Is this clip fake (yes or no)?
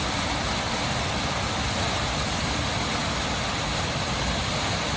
no